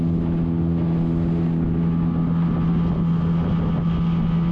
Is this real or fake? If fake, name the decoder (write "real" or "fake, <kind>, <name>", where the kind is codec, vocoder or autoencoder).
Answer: real